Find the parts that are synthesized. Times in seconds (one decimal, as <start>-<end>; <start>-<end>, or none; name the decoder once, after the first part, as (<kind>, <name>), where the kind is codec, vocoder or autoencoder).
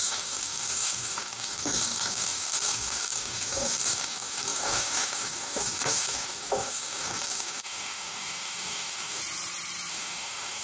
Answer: 0.0-9.2 (codec, DAC); 9.9-10.6